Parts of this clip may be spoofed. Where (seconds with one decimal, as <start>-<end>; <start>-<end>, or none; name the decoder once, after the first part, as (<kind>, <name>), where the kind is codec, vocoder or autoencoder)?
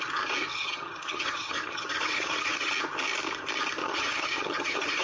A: 0.5-2.7 (vocoder, HiFi-GAN); 3.8-5.0